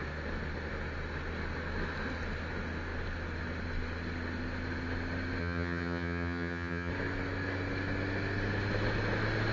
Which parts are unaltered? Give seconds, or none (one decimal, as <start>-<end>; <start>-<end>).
0.0-5.4; 6.9-9.5